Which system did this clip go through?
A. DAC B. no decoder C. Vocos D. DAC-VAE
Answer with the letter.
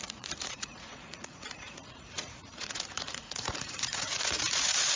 C